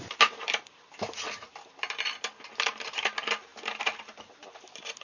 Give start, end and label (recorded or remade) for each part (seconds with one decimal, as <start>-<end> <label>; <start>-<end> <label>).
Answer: 0.0-5.0 recorded